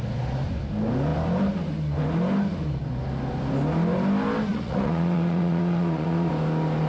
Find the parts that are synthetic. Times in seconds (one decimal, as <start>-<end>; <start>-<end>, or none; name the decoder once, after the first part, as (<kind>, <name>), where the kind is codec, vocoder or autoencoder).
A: 4.5-6.3 (vocoder, Vocos)

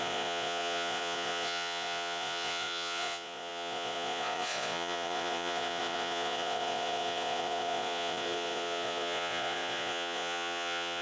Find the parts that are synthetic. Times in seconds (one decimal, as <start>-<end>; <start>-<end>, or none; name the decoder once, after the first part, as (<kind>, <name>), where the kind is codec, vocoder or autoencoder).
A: 0.0-11.0 (vocoder, Vocos)

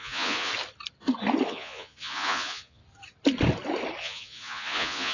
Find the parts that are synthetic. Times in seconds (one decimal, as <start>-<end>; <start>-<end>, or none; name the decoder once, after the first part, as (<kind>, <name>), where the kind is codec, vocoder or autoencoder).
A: 0.0-0.5 (vocoder, Vocos); 1.5-2.8; 4.0-5.1